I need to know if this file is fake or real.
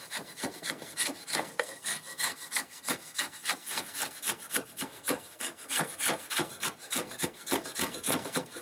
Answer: fake